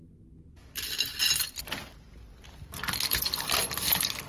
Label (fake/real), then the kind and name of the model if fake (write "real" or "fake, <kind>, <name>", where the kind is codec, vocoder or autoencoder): real